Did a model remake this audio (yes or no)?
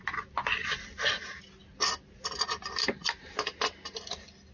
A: no